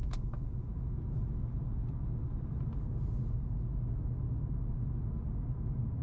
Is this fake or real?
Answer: real